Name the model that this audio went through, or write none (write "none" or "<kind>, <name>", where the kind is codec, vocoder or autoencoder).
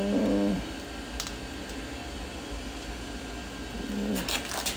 none